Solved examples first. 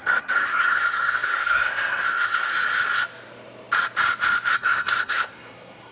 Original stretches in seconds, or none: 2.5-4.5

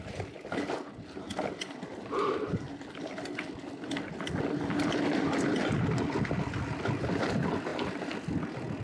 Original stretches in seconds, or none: 0.0-8.8

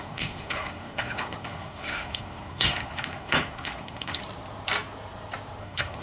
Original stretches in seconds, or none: 4.2-5.6